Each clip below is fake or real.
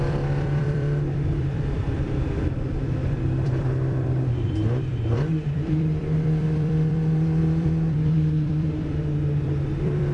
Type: fake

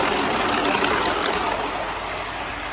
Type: real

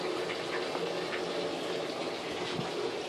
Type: real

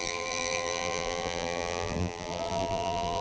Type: fake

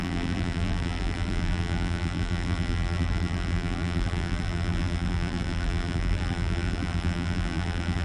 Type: fake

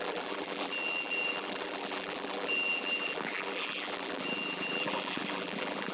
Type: fake